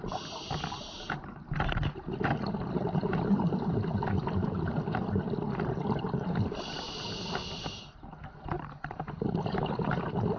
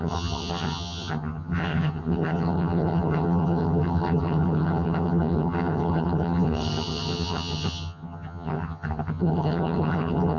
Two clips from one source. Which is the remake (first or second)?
second